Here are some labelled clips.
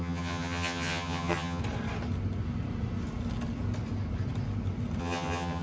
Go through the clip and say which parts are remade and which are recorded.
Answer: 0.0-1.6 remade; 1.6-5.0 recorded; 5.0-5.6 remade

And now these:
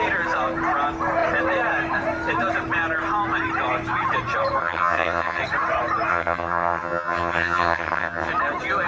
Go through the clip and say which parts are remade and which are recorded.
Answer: 0.0-4.6 recorded; 4.6-5.4 remade; 5.4-6.1 recorded; 6.1-8.3 remade; 8.3-8.9 recorded